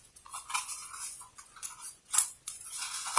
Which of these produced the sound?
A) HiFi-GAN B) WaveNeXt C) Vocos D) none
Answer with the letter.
C